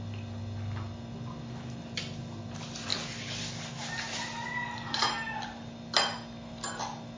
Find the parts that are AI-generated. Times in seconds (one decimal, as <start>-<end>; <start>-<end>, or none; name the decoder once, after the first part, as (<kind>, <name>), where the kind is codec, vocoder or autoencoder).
none